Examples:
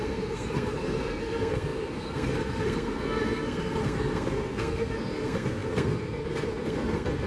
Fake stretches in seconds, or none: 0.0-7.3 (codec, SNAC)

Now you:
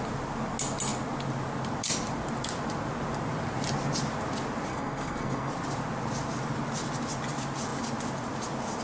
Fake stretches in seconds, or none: 4.7-5.5 (codec, SNAC)

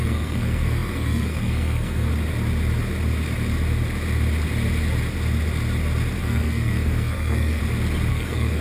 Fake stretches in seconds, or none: 0.0-2.1 (codec, SNAC); 6.2-7.6; 8.1-8.6